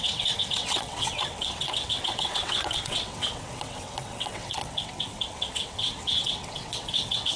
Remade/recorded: remade